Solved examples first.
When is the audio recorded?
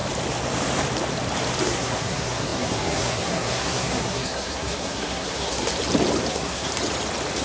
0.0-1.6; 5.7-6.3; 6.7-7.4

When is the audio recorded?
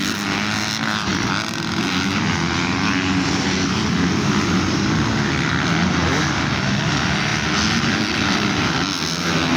0.0-9.6